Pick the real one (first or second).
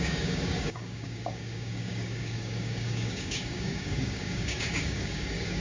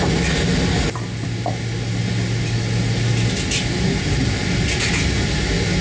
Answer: second